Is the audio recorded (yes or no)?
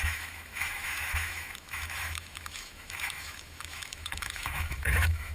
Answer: no